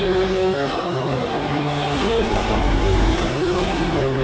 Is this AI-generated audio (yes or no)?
yes